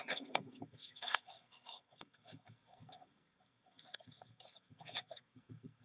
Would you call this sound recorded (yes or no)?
no